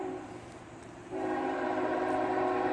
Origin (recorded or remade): remade